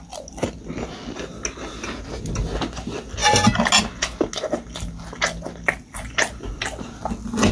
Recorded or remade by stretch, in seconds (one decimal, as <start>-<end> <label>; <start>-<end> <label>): 0.0-7.5 recorded